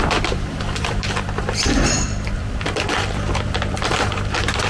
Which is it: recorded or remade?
remade